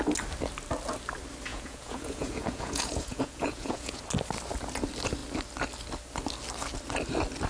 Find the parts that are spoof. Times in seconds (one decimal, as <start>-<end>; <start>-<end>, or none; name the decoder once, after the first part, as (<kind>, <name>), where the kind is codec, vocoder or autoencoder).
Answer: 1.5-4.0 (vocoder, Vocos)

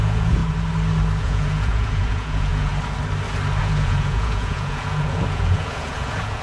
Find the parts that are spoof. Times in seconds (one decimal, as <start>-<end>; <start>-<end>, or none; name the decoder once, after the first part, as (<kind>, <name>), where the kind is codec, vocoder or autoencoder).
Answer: 0.0-0.4 (vocoder, Vocos); 1.2-2.7; 3.6-6.4

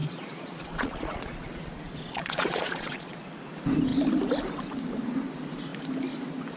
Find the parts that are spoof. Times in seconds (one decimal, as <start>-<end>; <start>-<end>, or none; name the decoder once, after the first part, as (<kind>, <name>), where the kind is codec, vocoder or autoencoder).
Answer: 0.0-3.2 (vocoder, Vocos)

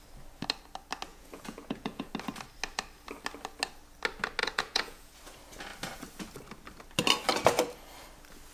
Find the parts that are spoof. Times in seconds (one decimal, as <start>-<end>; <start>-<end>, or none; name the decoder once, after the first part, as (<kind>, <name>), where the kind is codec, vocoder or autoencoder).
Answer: 1.1-2.1 (vocoder, Vocos); 4.4-5.1

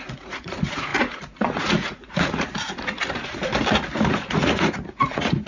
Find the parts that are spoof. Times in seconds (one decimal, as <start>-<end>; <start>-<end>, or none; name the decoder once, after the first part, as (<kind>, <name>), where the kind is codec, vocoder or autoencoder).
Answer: 0.0-3.5 (vocoder, Vocos); 4.1-5.5